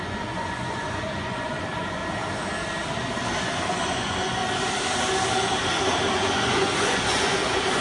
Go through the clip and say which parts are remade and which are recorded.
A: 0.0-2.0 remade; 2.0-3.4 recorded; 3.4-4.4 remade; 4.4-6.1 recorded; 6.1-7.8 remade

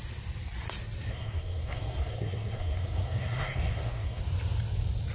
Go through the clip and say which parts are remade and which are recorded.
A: 0.0-1.1 recorded; 1.1-4.2 remade; 4.2-5.1 recorded

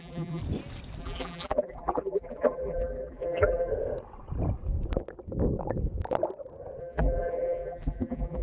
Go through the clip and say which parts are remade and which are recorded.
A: 0.0-0.4 remade; 0.4-1.0 recorded; 1.0-3.7 remade; 3.7-6.8 recorded; 6.8-8.4 remade

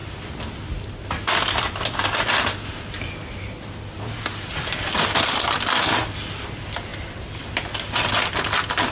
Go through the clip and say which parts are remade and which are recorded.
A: 0.0-8.9 recorded

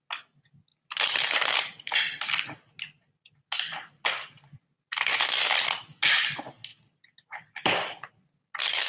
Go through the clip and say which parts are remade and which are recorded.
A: 0.0-0.7 recorded; 0.7-2.0 remade; 2.0-8.9 recorded

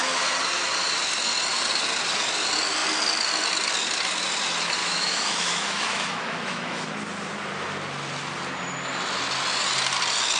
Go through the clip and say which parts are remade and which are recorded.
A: 0.0-4.8 recorded; 4.8-6.9 remade; 6.9-10.4 recorded

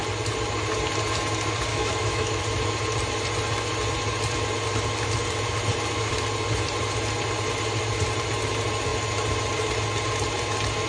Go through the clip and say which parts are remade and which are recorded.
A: 0.0-1.7 recorded; 1.7-2.4 remade; 2.4-10.9 recorded